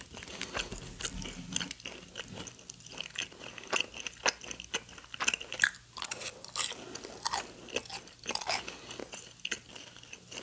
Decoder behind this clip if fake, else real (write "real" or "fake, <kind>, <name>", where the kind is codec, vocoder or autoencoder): real